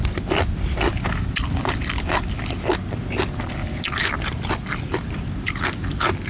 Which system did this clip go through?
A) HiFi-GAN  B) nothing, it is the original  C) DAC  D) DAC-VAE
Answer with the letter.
B